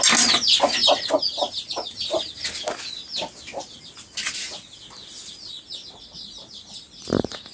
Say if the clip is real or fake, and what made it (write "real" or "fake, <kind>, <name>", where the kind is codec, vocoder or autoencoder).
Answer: real